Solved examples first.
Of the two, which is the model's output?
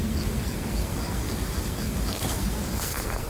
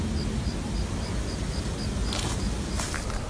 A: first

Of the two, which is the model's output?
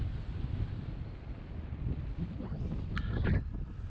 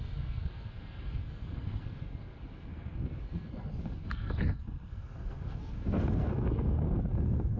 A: second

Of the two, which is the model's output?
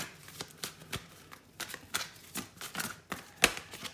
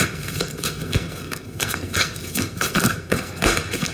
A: second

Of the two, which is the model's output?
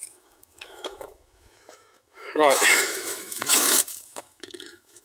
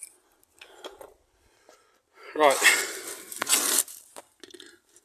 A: first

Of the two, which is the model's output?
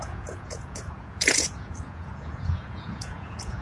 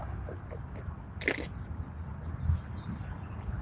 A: first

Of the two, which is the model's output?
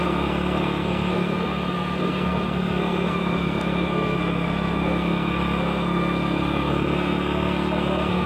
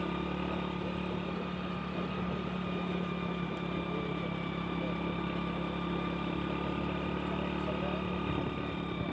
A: first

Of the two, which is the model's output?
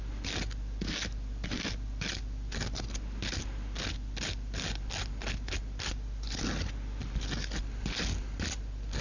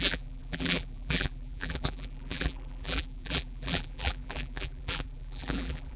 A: second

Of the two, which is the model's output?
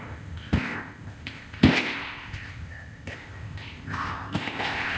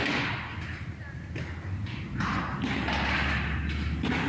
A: first